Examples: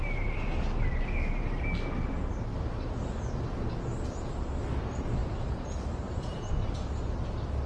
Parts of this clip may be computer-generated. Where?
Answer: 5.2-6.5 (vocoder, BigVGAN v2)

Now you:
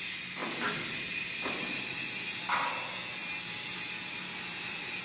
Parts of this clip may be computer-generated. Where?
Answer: 0.4-2.4 (vocoder, BigVGAN v2); 3.2-5.0

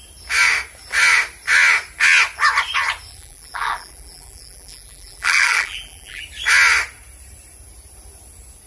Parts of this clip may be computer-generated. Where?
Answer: 3.1-6.2 (vocoder, BigVGAN v2)

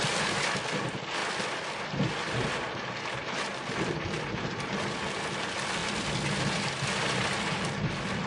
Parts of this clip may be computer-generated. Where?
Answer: 1.2-5.0 (vocoder, BigVGAN v2); 5.8-7.4

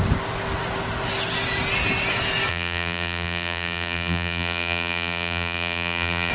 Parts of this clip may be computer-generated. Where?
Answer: 2.5-6.3 (vocoder, BigVGAN v2)

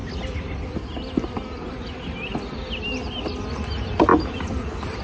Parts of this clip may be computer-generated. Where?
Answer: none

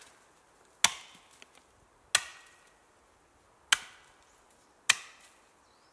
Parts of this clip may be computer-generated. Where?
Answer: none

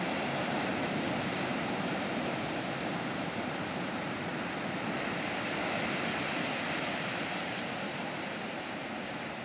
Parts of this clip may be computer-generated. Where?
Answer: 0.0-4.3 (vocoder, BigVGAN v2); 6.8-9.4